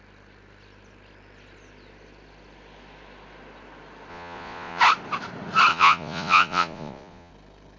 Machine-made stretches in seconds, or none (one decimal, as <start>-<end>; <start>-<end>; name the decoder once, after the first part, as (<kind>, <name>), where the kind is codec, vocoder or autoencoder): 4.1-4.8 (vocoder, Vocos); 5.7-7.3